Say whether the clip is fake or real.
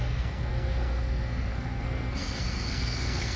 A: fake